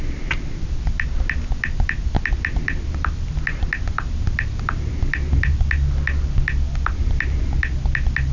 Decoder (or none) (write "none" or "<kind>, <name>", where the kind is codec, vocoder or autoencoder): none